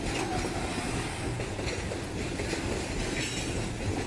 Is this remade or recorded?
recorded